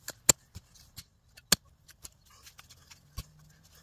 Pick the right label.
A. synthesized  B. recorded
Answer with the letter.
B